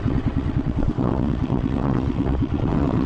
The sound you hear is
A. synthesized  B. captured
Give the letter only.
A